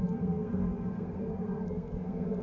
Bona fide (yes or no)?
no